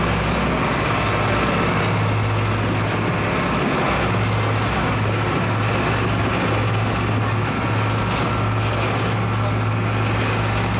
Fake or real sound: real